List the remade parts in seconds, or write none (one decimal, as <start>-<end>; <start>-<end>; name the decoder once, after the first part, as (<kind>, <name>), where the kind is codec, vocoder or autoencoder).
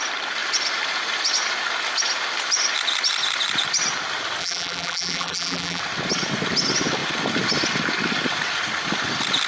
4.4-5.8 (vocoder, BigVGAN v2)